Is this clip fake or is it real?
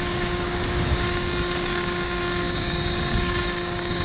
fake